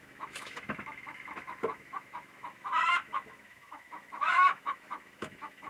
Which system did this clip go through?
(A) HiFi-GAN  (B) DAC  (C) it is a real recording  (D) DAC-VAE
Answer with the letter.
D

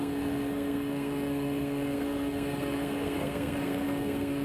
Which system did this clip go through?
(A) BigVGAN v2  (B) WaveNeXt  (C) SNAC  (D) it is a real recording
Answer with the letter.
C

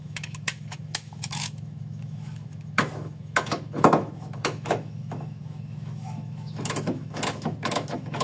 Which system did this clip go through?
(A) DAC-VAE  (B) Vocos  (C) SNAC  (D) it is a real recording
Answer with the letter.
A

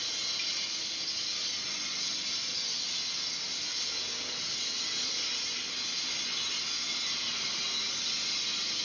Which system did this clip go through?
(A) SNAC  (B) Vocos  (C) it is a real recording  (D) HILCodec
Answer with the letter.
C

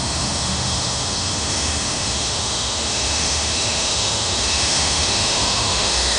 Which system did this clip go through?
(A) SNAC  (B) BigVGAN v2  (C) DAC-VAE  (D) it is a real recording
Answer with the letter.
C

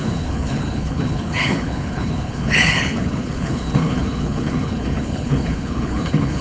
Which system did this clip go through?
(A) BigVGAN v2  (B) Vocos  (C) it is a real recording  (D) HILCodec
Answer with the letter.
D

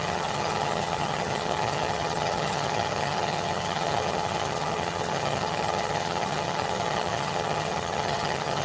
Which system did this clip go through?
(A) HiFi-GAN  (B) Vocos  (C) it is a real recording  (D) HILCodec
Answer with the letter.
A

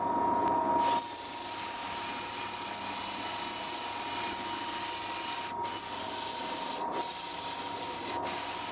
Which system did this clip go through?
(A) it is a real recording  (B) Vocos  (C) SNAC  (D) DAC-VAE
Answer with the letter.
A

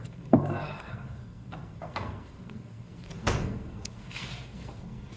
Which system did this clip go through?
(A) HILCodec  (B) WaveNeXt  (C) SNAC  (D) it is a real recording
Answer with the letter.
C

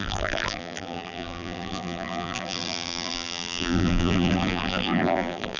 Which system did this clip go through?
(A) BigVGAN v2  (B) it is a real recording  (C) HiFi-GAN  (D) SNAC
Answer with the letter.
A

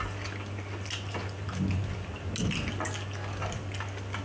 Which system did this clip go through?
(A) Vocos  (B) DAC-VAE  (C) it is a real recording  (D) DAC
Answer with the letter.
C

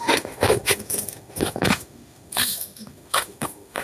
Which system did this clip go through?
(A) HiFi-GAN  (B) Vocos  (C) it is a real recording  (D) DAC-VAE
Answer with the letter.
D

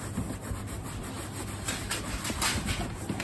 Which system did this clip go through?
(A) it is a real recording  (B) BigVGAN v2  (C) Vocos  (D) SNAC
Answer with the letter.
A